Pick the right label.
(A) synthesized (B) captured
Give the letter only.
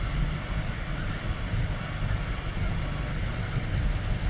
B